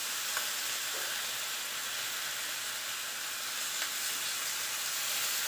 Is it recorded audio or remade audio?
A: recorded